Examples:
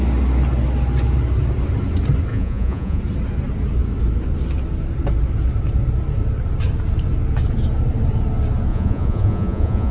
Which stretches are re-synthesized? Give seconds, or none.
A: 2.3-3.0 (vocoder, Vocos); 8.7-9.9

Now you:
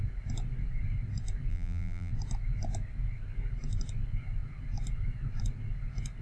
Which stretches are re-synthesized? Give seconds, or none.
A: 1.5-2.1 (vocoder, BigVGAN v2)

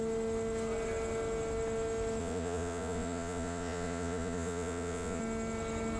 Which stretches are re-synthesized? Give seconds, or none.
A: 2.2-5.2 (vocoder, Vocos)

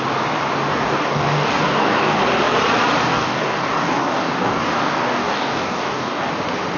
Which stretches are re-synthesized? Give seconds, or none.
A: 0.7-2.2 (codec, DAC); 3.1-6.3